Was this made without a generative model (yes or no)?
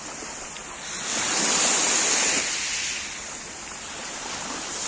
yes